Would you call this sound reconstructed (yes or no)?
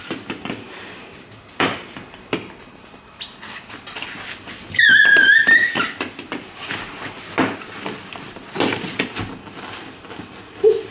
no